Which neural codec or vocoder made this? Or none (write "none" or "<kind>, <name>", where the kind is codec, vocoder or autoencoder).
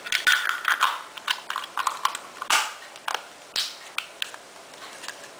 none